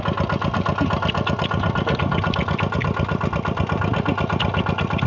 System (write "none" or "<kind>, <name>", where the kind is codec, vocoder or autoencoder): none